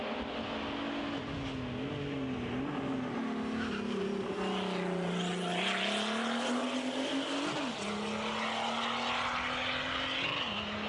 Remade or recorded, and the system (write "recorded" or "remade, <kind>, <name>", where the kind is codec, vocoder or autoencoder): recorded